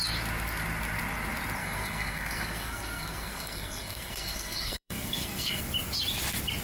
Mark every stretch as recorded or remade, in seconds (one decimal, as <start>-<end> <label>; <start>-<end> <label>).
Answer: 0.0-1.6 recorded; 1.6-5.6 remade; 5.6-6.6 recorded